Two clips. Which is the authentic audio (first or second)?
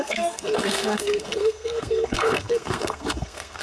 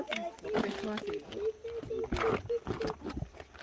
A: second